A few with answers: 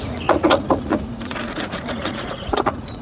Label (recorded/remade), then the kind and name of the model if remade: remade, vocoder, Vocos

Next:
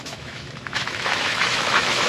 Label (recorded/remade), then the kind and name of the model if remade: remade, autoencoder, DAC-VAE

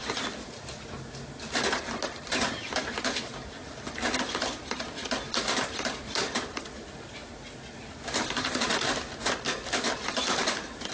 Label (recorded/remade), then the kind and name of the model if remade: recorded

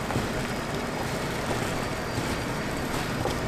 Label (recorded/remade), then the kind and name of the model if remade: recorded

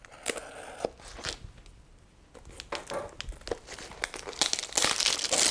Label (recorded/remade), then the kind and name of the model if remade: recorded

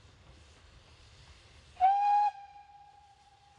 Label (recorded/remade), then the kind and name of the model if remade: recorded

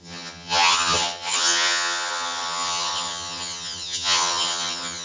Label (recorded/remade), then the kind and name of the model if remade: remade, vocoder, HiFi-GAN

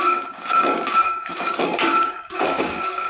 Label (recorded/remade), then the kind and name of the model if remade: remade, codec, DAC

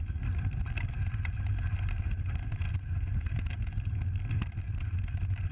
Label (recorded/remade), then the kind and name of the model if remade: recorded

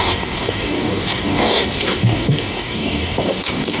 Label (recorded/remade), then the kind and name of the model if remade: remade, codec, DAC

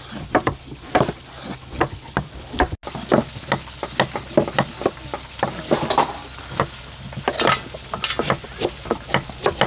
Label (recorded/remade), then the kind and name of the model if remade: recorded